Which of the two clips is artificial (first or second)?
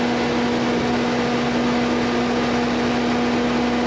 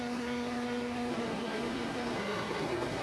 second